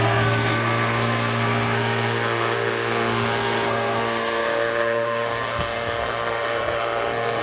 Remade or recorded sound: remade